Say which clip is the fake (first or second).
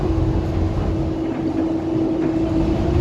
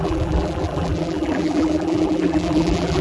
second